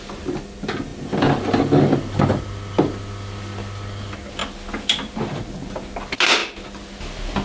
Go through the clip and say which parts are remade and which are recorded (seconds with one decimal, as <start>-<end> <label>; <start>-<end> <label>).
0.0-0.9 recorded; 0.9-2.4 remade; 2.4-7.4 recorded